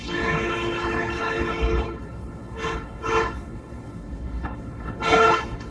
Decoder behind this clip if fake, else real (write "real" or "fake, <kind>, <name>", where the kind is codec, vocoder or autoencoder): fake, codec, HILCodec